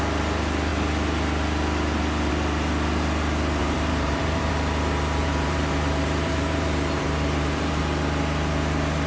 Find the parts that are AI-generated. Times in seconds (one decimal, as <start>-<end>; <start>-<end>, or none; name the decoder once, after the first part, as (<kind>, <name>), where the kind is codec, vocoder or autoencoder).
3.6-4.5 (vocoder, BigVGAN v2); 5.2-7.8